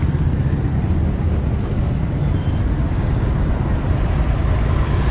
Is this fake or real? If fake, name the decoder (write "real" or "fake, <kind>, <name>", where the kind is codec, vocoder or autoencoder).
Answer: real